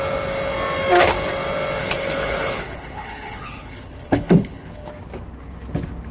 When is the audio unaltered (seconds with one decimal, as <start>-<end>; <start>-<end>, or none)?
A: 0.0-1.8; 4.9-6.1